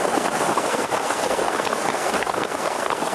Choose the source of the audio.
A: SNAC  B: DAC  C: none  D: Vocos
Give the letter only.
A